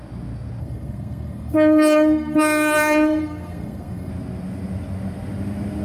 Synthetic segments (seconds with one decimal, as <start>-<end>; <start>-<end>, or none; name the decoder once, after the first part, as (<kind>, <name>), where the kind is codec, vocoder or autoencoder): 0.6-4.1 (codec, SNAC)